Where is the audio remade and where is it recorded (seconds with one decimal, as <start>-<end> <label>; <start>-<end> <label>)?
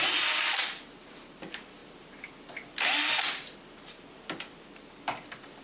0.0-5.6 recorded